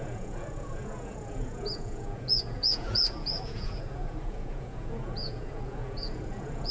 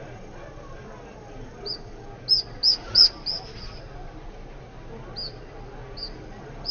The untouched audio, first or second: second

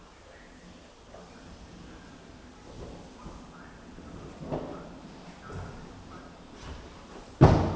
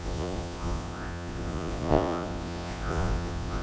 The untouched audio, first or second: first